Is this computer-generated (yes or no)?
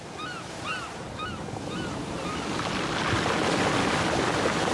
no